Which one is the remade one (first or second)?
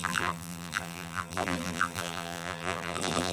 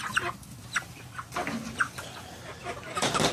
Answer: first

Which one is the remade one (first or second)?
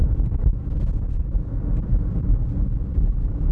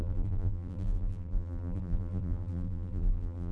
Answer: second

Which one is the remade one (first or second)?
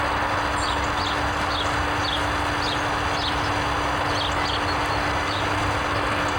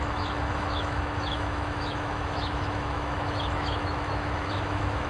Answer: second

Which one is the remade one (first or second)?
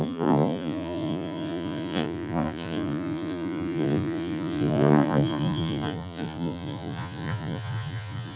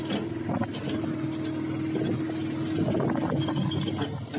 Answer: first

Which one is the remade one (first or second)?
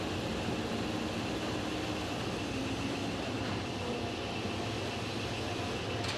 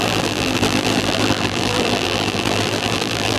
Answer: second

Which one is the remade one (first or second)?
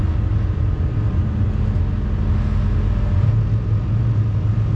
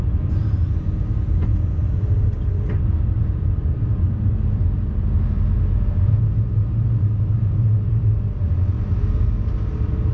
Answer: second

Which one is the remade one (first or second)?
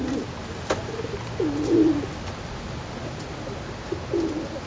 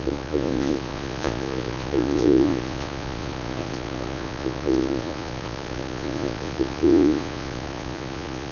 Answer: second